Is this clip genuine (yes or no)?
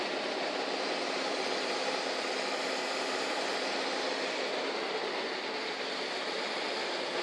yes